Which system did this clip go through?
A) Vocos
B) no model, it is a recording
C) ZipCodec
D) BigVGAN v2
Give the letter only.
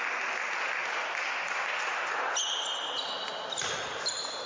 B